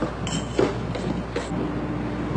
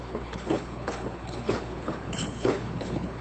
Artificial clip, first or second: second